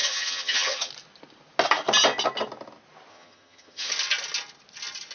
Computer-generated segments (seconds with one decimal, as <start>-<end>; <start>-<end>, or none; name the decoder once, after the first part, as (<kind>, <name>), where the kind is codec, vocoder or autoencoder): 0.0-0.9 (vocoder, HiFi-GAN); 3.1-3.9